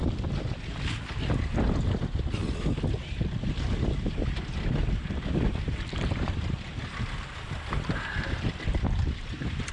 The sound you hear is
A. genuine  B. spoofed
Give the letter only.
A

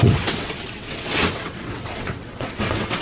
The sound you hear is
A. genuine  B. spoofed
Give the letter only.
B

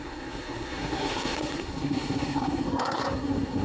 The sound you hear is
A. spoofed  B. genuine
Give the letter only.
A